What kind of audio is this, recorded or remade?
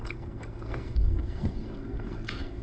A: remade